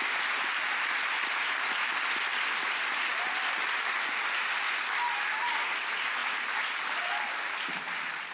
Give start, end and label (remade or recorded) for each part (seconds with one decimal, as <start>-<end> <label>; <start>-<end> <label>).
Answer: 0.0-8.3 recorded